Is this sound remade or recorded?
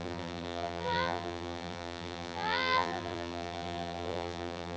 remade